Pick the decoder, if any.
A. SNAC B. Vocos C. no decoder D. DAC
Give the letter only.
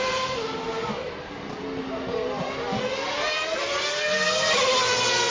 C